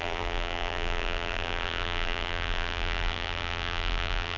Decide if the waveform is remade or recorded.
remade